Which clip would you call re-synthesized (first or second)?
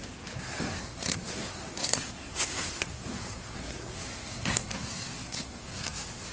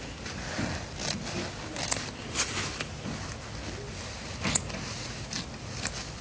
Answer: first